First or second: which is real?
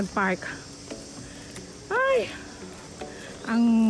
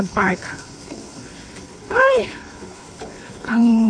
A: first